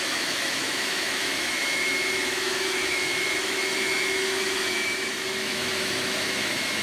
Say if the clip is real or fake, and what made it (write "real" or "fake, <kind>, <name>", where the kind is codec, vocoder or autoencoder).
fake, autoencoder, DAC-VAE